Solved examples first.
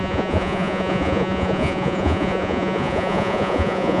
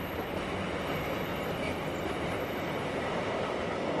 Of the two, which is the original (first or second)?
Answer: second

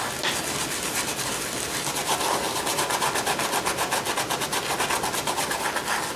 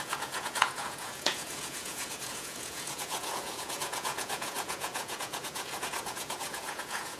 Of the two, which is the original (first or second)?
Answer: first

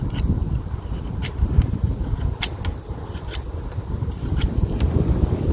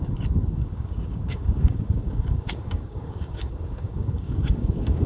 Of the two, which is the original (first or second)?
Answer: first